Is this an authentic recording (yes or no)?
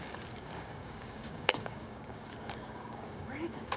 no